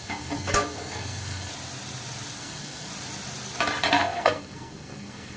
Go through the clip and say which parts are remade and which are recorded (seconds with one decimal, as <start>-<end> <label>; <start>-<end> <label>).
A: 0.0-1.5 remade; 1.5-2.4 recorded; 2.4-2.9 remade; 2.9-3.9 recorded; 3.9-5.4 remade